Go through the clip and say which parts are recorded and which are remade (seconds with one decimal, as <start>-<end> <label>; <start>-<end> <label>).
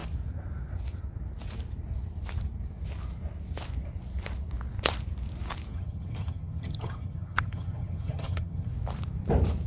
0.0-5.7 recorded; 5.7-8.7 remade; 8.7-9.7 recorded